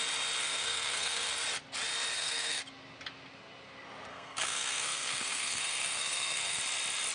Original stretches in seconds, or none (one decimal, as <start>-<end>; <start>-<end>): 0.0-0.4; 1.3-2.1; 2.6-4.1; 6.6-7.1